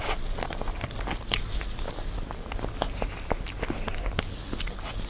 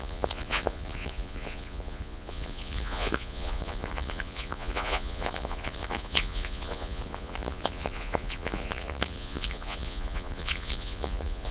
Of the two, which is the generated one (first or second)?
second